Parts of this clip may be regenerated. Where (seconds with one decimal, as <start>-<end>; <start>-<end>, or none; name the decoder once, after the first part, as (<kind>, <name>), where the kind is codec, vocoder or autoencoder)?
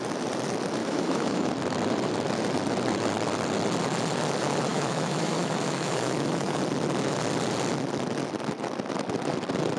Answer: 0.8-1.5 (autoencoder, DAC-VAE); 4.7-6.6